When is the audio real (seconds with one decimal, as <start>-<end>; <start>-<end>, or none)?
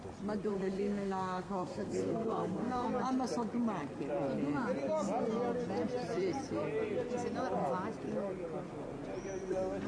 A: 0.0-0.5; 2.9-9.9